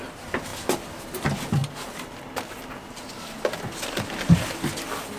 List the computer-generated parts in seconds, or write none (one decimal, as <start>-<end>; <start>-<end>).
none